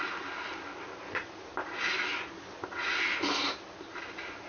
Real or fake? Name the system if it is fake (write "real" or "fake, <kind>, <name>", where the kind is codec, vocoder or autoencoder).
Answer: real